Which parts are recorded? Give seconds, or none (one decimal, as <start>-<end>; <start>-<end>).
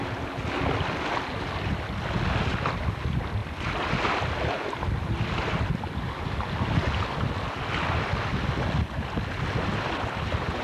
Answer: 0.0-10.6